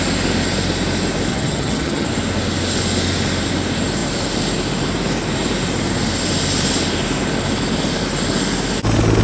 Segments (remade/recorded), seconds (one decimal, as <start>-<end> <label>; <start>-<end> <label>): 0.0-1.3 recorded; 1.3-2.1 remade; 2.1-9.2 recorded